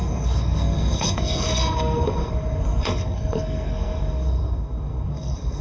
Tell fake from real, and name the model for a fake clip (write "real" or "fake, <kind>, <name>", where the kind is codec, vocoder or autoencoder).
fake, codec, SNAC